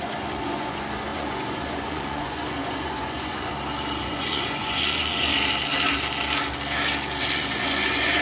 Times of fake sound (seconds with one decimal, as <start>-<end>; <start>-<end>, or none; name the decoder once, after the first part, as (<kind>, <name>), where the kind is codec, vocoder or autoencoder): 0.0-3.5 (vocoder, Vocos); 4.0-5.3; 7.2-8.2